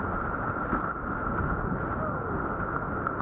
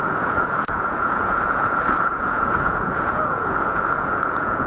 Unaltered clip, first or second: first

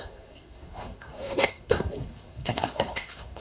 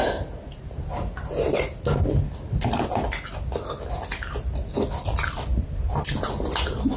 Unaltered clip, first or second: second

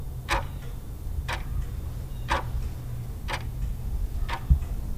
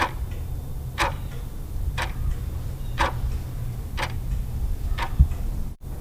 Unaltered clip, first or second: first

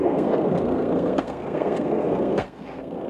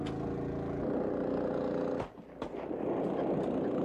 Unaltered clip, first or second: second